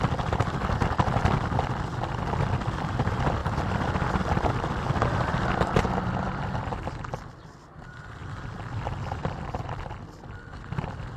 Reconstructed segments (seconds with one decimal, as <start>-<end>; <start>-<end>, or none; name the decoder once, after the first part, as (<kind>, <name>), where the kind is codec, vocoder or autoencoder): 8.2-8.8 (vocoder, BigVGAN v2)